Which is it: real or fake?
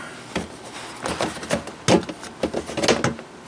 real